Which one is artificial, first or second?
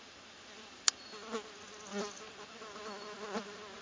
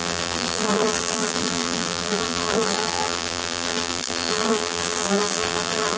second